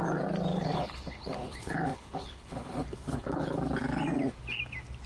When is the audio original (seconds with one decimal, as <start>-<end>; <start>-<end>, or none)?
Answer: 0.0-0.5; 3.6-5.1